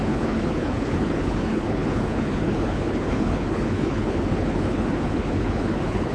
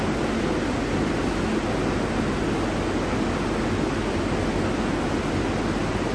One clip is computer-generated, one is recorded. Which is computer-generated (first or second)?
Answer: first